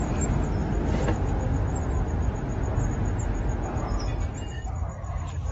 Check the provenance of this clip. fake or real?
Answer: real